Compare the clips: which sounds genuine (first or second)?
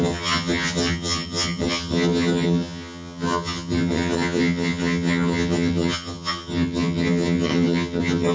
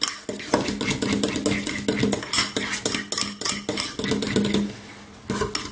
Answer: second